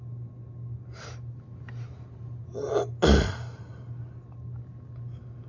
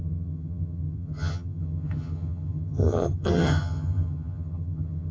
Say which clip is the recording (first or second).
first